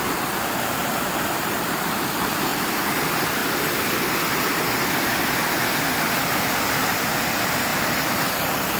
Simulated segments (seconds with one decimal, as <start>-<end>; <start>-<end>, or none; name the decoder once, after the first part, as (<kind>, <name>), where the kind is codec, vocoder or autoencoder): 0.0-3.4 (vocoder, BigVGAN v2); 6.1-8.8